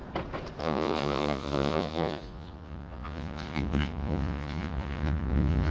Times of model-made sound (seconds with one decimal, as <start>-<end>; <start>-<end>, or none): 0.6-5.7